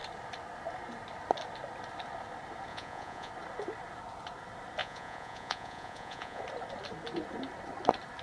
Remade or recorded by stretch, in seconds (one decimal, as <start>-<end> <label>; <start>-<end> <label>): 0.0-2.7 recorded; 2.7-3.3 remade; 3.3-4.8 recorded; 4.8-6.4 remade; 6.4-8.2 recorded